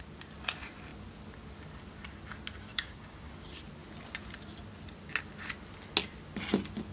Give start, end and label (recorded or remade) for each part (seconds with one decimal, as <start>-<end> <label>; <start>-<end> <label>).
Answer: 0.0-2.7 recorded; 2.7-3.3 remade; 3.3-6.9 recorded